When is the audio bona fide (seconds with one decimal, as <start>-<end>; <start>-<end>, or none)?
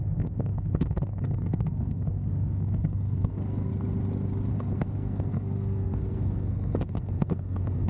3.7-4.5